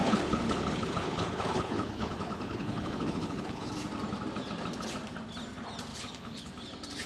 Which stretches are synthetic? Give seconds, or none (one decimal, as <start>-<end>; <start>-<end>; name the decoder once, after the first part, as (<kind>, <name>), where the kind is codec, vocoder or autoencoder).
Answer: 0.0-3.7 (codec, HILCodec); 5.9-6.5